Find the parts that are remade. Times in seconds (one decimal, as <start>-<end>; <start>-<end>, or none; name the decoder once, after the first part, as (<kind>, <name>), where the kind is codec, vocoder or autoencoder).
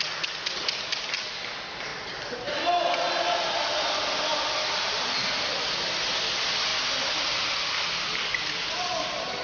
none